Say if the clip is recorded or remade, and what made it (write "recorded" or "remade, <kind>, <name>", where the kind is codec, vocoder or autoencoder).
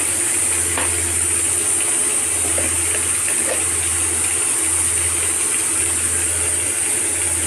recorded